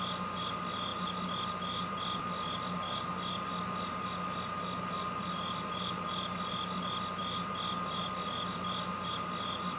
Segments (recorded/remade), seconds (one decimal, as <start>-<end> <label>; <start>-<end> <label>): 0.0-9.8 recorded